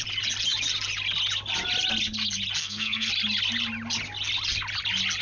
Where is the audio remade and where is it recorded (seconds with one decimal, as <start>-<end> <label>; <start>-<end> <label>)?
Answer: 0.0-2.6 recorded; 2.6-3.1 remade; 3.1-5.2 recorded